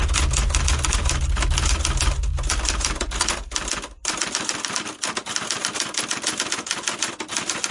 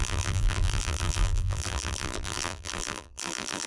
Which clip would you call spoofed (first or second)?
second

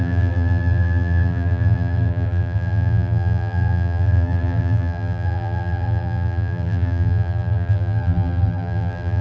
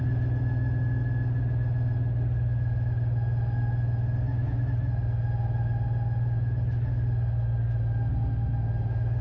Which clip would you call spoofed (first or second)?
first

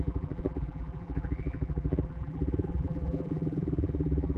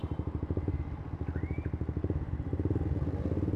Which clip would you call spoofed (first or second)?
first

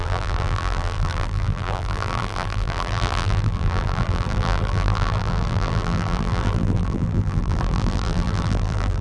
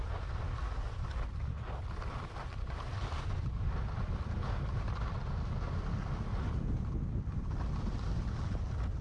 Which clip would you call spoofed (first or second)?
first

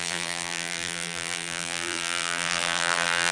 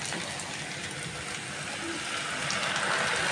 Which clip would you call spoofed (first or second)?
first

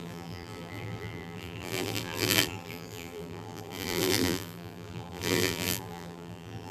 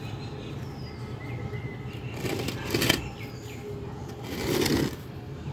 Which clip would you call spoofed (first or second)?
first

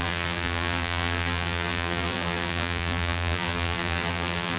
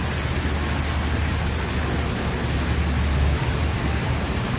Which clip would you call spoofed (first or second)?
first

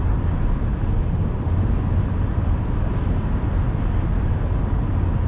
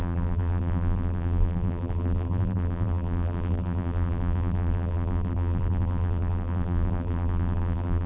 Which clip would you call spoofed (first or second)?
second